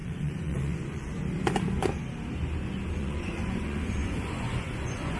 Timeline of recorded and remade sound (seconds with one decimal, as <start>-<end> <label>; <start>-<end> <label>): 0.0-1.1 remade; 1.1-3.0 recorded; 3.0-5.2 remade